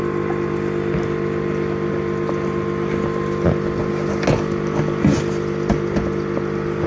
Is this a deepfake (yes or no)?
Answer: no